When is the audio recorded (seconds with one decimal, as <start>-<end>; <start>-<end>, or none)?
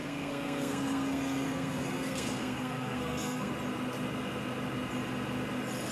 3.5-5.9